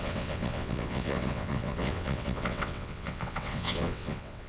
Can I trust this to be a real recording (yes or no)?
no